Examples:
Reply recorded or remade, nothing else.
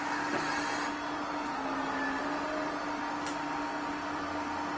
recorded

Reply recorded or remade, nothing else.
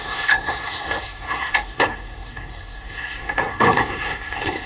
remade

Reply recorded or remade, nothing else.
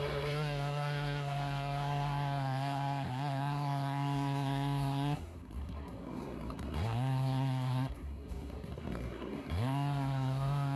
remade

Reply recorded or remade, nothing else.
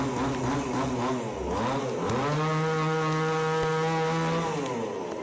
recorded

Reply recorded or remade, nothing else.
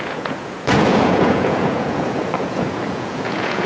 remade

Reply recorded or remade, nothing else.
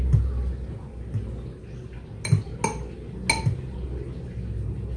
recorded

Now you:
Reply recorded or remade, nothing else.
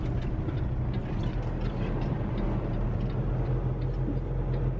recorded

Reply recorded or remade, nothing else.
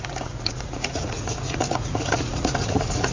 remade